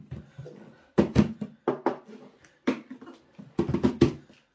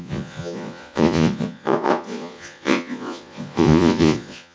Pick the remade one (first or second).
second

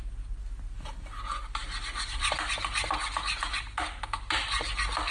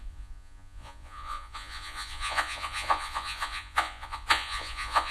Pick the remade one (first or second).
second